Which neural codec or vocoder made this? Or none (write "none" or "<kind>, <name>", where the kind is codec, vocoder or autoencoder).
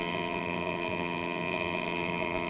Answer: vocoder, BigVGAN v2